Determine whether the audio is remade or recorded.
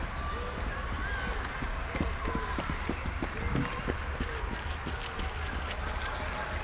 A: recorded